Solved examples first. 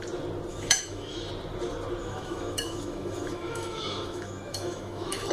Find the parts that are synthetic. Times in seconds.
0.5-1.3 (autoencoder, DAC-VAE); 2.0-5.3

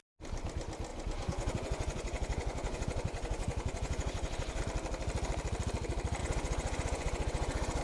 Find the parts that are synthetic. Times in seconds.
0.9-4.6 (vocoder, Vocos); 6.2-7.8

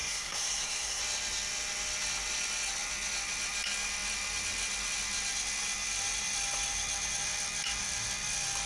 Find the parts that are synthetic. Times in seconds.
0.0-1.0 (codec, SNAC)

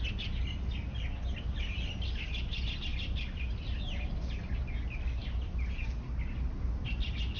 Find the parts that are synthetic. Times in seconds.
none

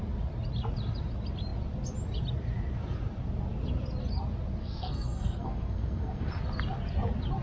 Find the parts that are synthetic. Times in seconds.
4.6-6.3 (codec, SNAC)

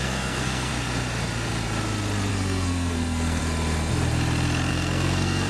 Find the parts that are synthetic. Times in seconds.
0.0-0.7 (codec, SNAC); 2.3-3.4; 4.7-5.5

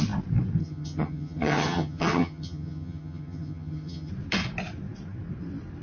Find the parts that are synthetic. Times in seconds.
0.6-4.1 (vocoder, HiFi-GAN)

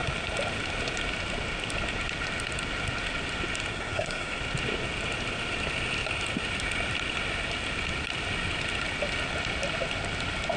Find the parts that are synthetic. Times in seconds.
3.7-4.4 (codec, SNAC)